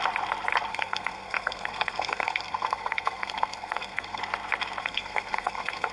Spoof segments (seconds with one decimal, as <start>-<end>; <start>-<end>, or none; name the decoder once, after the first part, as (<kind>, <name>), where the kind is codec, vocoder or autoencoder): 0.7-4.2 (codec, SNAC); 4.8-5.9